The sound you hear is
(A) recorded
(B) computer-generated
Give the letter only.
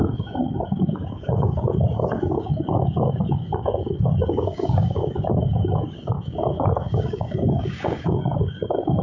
B